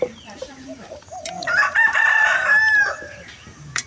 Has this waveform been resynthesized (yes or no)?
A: yes